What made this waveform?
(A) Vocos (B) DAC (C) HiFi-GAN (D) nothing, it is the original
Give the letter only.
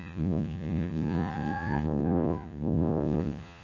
A